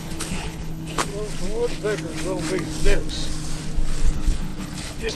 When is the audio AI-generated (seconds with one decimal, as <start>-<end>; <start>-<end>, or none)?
0.0-1.1; 4.0-5.1